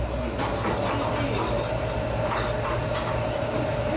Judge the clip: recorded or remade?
recorded